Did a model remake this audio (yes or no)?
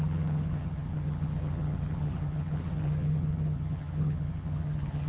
yes